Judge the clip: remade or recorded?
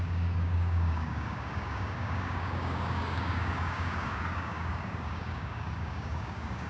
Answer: remade